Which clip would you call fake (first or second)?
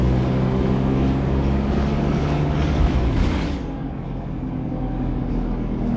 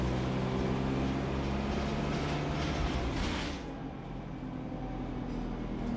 first